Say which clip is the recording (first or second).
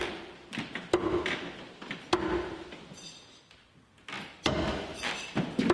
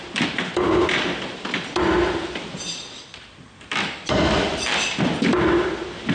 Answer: first